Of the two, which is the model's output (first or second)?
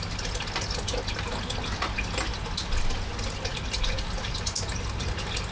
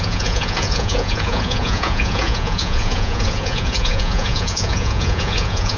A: second